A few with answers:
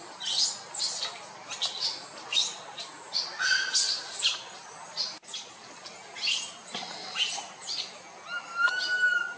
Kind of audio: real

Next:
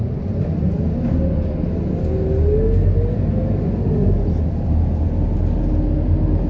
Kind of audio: real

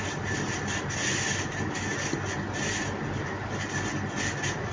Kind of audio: real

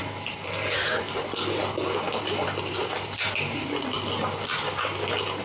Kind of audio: real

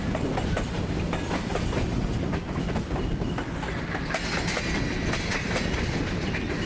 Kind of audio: real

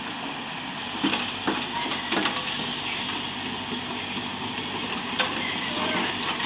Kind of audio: real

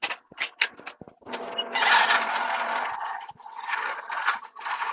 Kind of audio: real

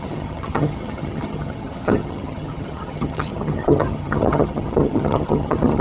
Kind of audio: fake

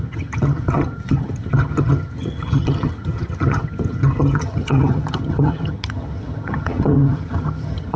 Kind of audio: fake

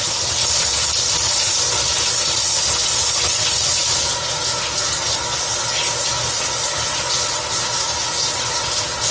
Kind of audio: real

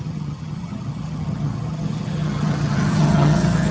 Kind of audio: fake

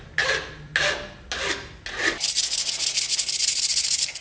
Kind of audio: real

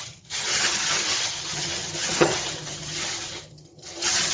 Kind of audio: fake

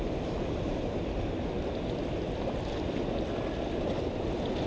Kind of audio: real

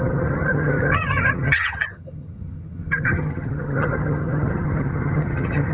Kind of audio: fake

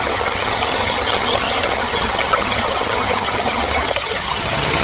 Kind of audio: fake